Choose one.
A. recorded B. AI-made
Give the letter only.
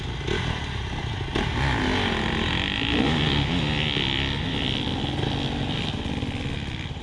A